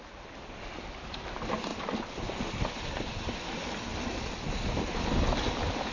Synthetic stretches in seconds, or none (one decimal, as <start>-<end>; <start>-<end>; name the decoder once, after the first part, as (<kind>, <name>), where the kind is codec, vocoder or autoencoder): none